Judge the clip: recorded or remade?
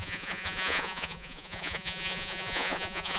remade